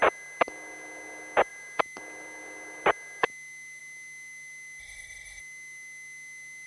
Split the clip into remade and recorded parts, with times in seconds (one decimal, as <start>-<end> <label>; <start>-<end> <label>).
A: 0.0-4.8 recorded; 4.8-5.4 remade; 5.4-6.7 recorded